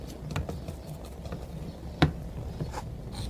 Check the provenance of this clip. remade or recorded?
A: recorded